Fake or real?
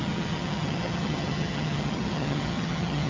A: fake